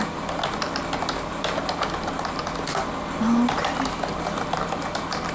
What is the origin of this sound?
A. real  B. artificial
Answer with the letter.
A